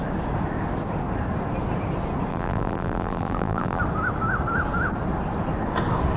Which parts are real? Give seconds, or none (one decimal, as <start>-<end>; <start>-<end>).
0.0-2.3; 3.8-6.2